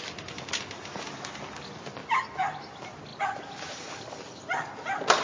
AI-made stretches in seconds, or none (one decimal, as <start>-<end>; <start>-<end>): 0.0-2.0; 2.6-3.1; 3.9-5.2